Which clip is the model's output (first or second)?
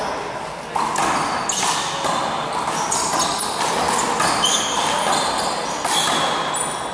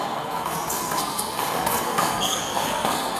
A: second